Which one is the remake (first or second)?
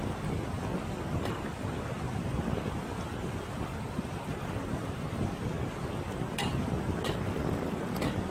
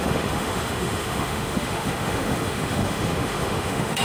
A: second